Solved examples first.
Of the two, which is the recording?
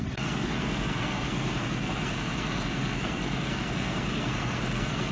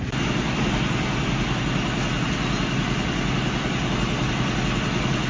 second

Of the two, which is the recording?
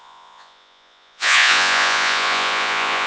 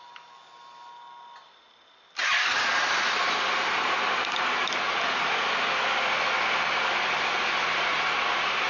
second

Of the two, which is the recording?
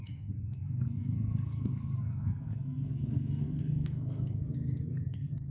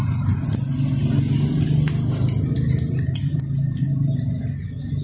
second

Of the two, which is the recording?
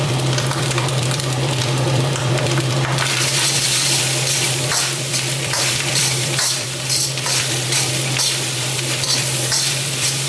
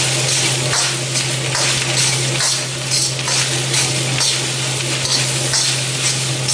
second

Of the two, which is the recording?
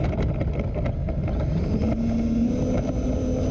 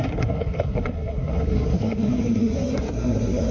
first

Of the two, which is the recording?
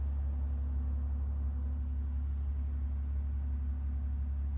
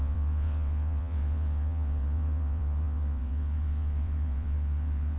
first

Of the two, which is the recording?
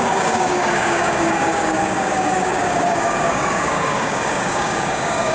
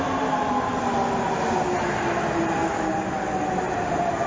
second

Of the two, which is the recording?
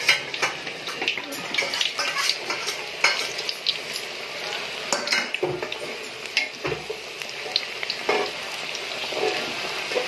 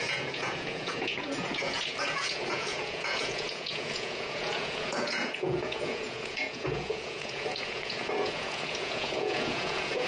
first